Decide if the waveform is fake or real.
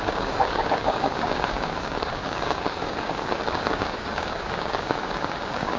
fake